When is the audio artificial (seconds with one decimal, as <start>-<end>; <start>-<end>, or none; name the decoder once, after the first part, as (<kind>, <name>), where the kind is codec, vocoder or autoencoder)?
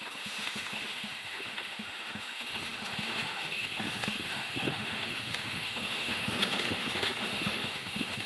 0.0-8.3 (autoencoder, DAC-VAE)